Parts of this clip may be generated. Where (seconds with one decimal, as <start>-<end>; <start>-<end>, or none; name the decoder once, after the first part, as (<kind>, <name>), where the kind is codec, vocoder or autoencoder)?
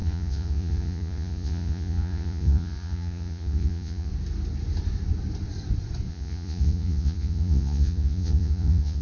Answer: 0.0-4.1 (vocoder, Vocos); 6.1-9.0